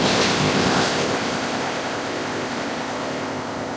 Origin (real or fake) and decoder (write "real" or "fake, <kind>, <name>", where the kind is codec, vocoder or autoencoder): fake, codec, ZipCodec